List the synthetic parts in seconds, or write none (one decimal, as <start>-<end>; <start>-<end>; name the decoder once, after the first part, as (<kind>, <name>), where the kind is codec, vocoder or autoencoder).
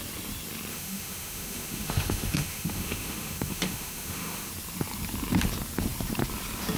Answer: 0.7-4.5 (autoencoder, DAC-VAE)